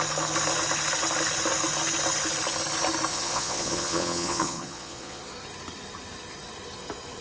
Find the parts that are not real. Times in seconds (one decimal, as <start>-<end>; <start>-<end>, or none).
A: 3.1-5.2